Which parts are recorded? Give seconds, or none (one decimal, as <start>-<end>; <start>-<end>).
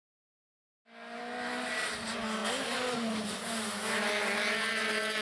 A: 0.0-5.2